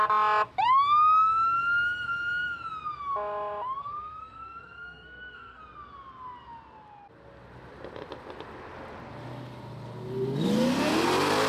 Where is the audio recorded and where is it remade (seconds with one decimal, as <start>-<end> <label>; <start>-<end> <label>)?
0.0-3.8 recorded; 3.8-5.6 remade; 5.6-11.5 recorded